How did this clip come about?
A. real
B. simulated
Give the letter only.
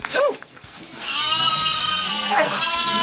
B